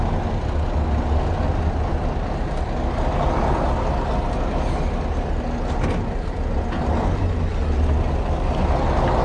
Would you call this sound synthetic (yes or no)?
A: no